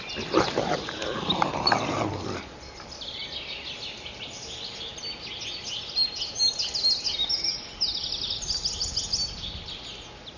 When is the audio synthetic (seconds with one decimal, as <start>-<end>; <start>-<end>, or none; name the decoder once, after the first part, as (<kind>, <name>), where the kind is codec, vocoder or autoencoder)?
none